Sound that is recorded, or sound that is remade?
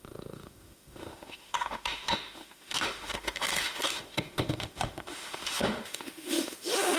remade